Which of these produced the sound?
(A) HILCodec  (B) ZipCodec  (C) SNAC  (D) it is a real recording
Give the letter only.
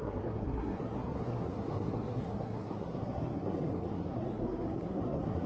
C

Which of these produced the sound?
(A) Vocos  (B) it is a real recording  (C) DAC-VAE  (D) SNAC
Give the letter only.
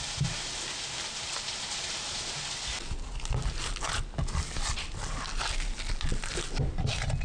B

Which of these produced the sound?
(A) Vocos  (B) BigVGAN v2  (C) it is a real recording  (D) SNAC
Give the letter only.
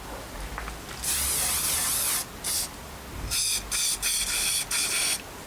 C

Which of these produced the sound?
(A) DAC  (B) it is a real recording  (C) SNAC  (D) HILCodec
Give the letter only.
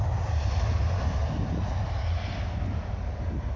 B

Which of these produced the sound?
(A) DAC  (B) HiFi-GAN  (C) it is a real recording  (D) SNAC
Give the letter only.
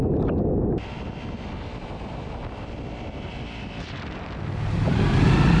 C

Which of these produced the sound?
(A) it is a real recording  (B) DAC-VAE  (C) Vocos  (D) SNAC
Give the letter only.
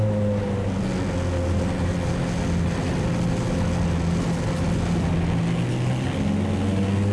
A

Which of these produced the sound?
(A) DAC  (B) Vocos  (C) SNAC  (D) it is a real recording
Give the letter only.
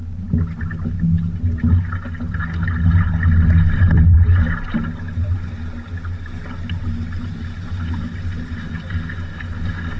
D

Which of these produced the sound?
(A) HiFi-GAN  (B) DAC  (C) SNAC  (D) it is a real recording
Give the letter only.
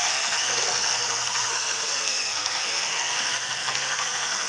C